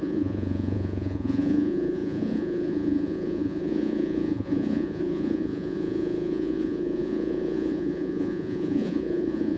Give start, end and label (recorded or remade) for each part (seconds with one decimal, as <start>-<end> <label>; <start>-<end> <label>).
0.0-9.6 remade